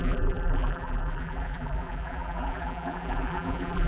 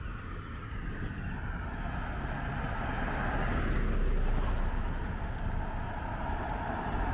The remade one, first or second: first